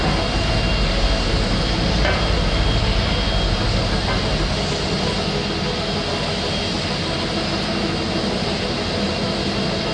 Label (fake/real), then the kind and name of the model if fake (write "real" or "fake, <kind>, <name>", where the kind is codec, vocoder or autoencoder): real